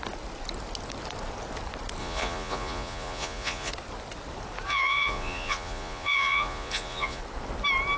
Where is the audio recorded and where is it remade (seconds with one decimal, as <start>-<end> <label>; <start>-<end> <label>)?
0.0-2.0 recorded; 2.0-3.7 remade; 3.7-4.7 recorded; 4.7-7.2 remade; 7.2-8.0 recorded